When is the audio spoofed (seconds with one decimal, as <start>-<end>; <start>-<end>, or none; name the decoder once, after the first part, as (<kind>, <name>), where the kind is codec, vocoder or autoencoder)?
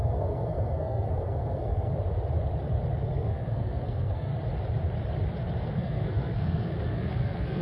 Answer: 0.0-1.9 (codec, SNAC); 3.0-4.3; 5.6-7.6